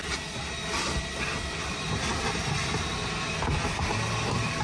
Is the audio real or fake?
real